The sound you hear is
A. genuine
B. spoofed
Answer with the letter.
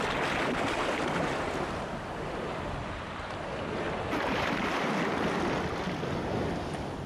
A